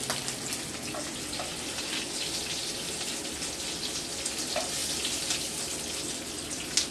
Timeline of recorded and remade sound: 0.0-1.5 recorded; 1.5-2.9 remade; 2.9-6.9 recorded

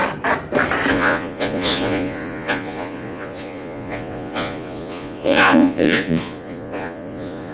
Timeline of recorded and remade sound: 0.0-0.9 recorded; 0.9-7.5 remade